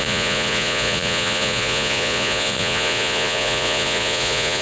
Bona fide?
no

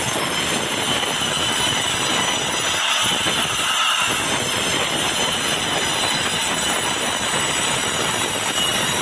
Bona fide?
yes